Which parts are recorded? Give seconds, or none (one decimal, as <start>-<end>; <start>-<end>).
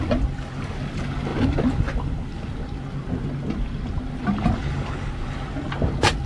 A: 0.0-6.3